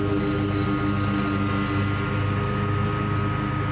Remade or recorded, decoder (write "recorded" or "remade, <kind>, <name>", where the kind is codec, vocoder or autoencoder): recorded